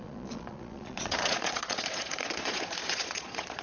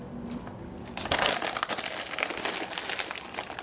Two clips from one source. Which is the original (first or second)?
second